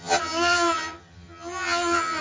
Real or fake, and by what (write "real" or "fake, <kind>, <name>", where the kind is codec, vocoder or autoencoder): fake, vocoder, HiFi-GAN